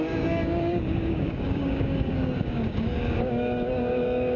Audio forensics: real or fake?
fake